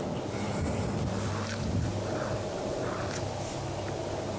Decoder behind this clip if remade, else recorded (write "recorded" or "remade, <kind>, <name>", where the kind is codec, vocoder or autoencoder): recorded